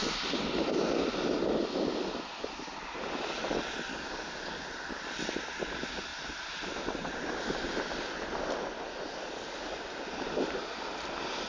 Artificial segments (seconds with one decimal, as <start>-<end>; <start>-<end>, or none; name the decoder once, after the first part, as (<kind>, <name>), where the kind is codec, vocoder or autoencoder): 0.0-0.6 (vocoder, BigVGAN v2); 6.1-7.7